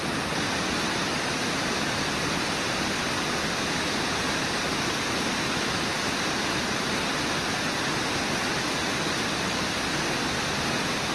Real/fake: real